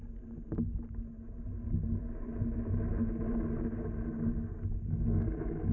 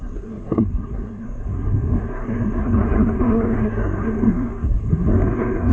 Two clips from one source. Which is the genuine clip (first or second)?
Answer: first